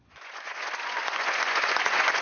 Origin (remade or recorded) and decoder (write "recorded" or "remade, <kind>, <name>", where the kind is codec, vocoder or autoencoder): remade, vocoder, Vocos